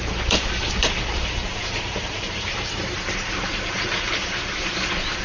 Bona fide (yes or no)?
no